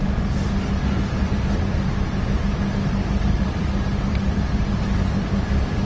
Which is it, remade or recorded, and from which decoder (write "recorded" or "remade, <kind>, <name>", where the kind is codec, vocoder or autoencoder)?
remade, vocoder, BigVGAN v2